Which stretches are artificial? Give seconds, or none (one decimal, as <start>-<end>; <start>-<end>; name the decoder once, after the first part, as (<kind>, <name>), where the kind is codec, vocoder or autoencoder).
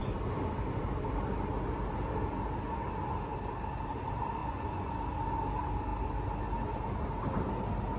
4.4-4.9 (vocoder, Vocos)